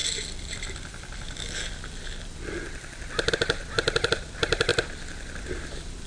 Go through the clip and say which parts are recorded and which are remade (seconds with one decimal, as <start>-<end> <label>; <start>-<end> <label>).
0.0-3.3 recorded; 3.3-4.7 remade; 4.7-5.4 recorded; 5.4-6.1 remade